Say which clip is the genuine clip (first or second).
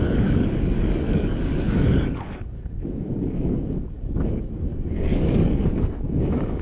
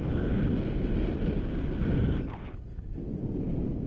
second